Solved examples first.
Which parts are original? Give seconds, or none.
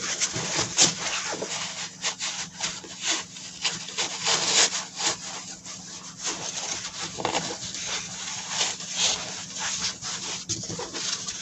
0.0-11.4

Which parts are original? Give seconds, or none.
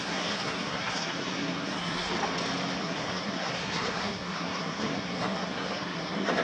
2.1-2.8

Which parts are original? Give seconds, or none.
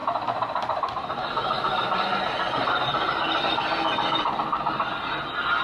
0.0-5.6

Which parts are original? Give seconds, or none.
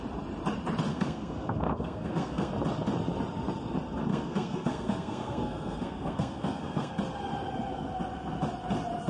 0.0-0.9; 2.5-4.1; 6.9-9.1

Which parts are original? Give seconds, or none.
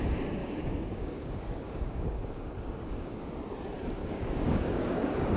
0.0-0.4; 3.3-4.0; 4.8-5.4